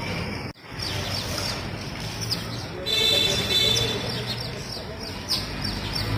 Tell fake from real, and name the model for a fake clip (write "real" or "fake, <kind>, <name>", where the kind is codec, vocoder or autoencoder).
real